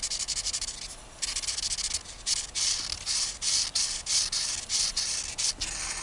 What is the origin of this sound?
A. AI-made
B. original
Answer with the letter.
B